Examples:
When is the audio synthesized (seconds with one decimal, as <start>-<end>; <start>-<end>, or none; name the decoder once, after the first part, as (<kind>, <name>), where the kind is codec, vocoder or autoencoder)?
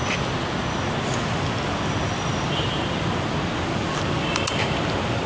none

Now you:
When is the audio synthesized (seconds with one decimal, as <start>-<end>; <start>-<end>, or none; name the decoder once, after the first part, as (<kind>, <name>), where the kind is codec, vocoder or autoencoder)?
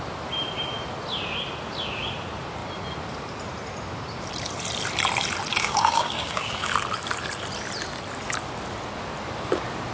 5.5-6.7 (codec, DAC)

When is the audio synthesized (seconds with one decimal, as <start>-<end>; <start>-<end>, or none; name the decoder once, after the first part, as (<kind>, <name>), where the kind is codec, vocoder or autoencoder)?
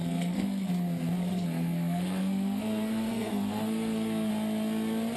0.0-0.7 (codec, SNAC); 1.2-4.3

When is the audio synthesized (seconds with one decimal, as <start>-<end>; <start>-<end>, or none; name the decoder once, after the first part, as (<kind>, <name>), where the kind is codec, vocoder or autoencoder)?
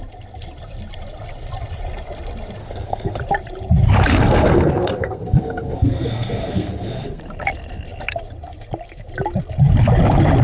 2.6-3.2 (codec, SNAC); 4.1-7.2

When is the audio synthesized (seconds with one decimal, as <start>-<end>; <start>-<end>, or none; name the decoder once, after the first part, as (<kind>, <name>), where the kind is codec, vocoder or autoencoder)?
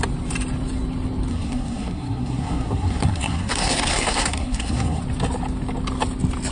1.3-5.0 (codec, SNAC)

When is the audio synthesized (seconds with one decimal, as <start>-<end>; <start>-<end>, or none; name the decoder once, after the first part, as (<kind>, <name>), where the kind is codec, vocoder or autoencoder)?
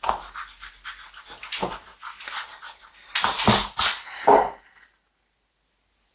none